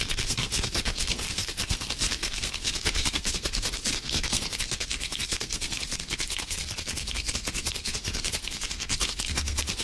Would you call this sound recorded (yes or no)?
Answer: no